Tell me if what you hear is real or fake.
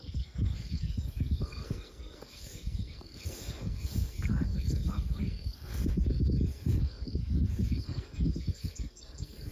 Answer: fake